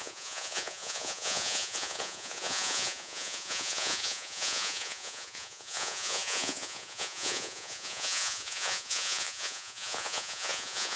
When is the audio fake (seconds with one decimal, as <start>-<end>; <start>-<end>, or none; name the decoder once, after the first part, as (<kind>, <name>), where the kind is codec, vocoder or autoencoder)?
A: 0.0-11.0 (vocoder, Vocos)